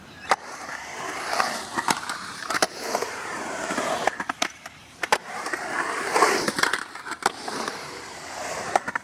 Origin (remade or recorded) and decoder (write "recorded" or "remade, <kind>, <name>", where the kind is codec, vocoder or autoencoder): remade, vocoder, BigVGAN v2